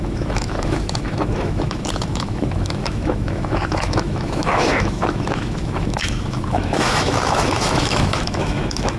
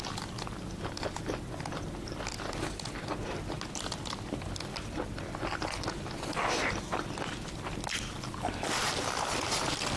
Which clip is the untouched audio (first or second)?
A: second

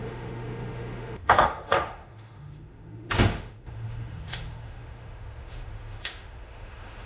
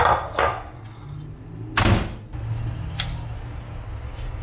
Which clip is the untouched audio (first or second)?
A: second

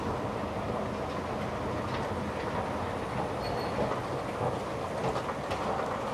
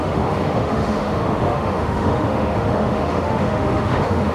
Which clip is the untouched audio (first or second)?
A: first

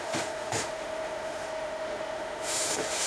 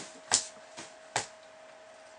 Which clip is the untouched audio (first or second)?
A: second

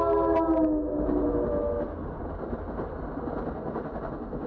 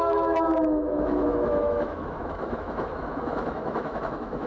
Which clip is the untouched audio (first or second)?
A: first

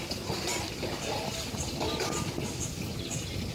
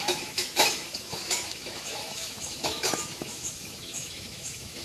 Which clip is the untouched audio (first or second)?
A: first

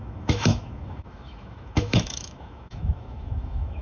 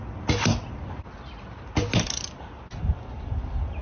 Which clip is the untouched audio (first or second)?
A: second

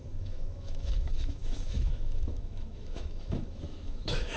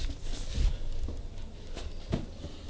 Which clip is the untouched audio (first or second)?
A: second